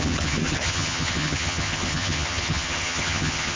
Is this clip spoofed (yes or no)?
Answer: yes